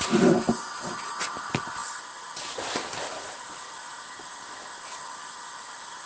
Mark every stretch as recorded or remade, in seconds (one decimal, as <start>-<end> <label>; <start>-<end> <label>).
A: 0.0-6.1 recorded